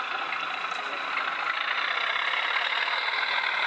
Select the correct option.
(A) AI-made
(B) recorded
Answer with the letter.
B